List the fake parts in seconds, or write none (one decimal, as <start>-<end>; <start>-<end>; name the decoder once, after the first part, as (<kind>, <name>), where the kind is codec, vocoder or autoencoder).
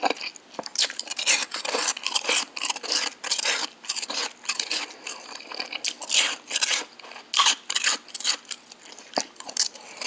none